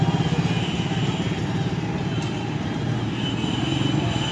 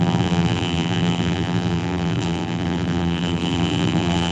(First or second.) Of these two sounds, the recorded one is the first